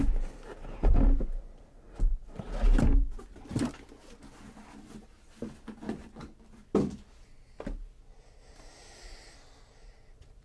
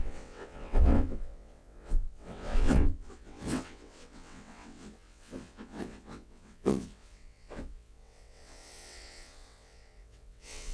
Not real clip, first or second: second